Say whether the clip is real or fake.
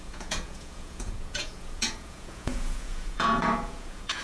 fake